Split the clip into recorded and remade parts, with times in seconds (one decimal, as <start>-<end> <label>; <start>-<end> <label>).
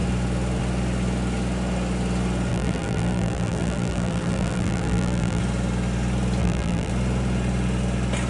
0.0-2.5 recorded; 2.5-5.4 remade; 5.4-6.4 recorded; 6.4-6.9 remade; 6.9-8.3 recorded